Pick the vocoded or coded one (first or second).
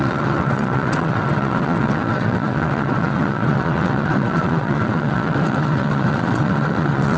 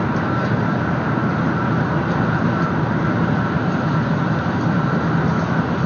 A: first